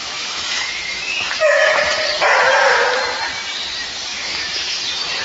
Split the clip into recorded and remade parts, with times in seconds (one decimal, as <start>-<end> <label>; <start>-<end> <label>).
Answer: 0.0-1.3 remade; 1.3-4.1 recorded; 4.1-4.8 remade; 4.8-5.2 recorded